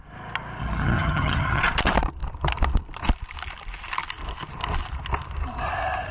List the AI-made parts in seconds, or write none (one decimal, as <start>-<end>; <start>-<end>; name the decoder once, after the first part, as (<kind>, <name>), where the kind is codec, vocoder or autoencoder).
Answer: 0.6-1.6 (vocoder, HiFi-GAN)